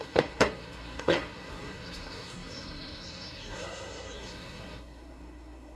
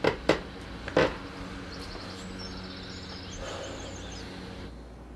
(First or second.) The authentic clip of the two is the second